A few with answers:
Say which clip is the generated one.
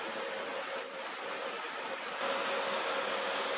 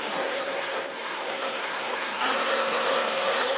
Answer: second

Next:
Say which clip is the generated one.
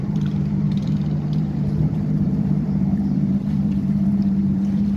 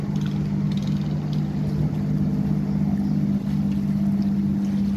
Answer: first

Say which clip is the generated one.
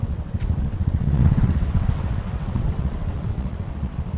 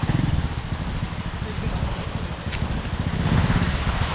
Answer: first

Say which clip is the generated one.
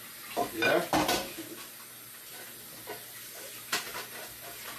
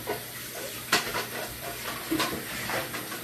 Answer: second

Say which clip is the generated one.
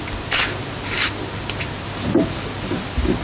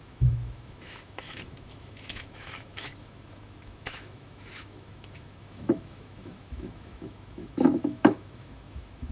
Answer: second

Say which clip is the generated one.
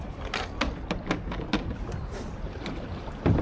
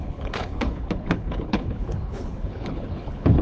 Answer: second